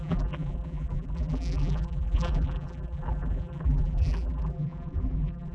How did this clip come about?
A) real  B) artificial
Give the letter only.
B